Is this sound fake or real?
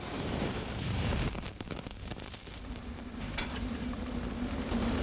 fake